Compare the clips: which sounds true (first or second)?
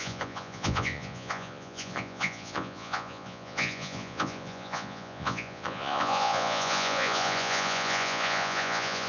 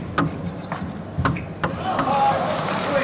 second